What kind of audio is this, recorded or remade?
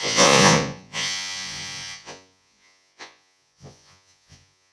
remade